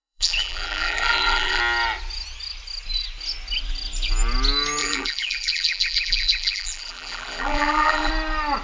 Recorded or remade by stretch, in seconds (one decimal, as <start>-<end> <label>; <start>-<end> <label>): 0.0-1.6 remade; 1.6-4.8 recorded; 4.8-8.1 remade; 8.1-8.6 recorded